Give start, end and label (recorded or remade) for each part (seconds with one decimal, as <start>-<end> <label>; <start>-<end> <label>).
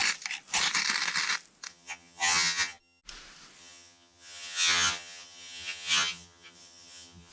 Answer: 0.0-1.7 recorded; 1.7-3.0 remade; 3.0-3.6 recorded; 3.6-7.3 remade